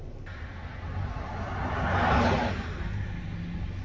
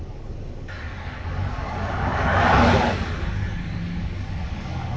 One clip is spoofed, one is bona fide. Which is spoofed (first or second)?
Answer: second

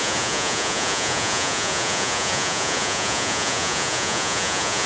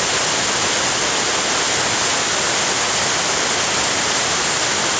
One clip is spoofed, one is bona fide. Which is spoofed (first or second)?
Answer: first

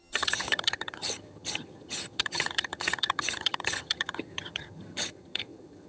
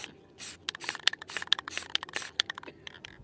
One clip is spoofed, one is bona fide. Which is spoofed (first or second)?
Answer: first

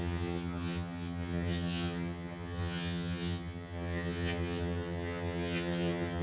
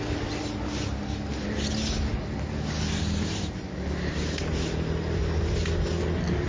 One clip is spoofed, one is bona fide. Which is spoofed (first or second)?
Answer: first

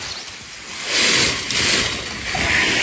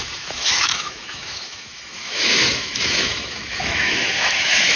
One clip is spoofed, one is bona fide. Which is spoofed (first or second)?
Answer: second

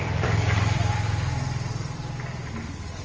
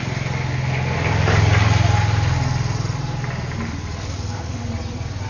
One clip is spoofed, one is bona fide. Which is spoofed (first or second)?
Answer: first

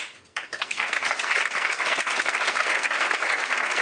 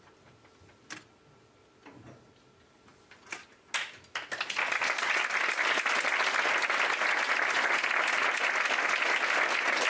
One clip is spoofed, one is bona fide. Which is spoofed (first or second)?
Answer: first